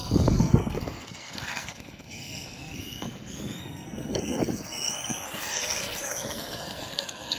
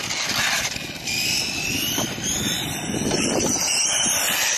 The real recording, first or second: second